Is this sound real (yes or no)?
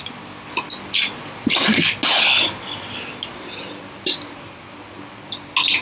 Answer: yes